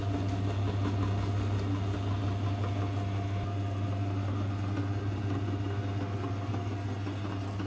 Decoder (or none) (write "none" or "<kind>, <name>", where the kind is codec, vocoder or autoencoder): none